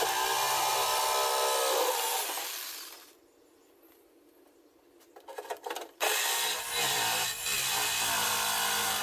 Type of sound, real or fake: real